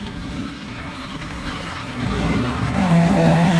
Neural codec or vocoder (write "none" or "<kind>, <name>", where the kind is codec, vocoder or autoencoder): codec, SNAC